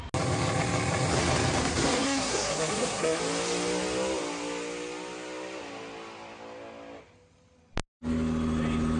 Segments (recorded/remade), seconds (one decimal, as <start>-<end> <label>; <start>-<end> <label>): 0.0-1.6 recorded; 1.6-3.2 remade; 3.2-9.0 recorded